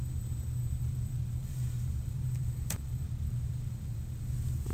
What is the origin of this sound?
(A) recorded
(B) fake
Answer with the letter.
B